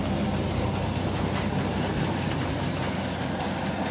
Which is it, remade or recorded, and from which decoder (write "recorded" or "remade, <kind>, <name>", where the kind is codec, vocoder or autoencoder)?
recorded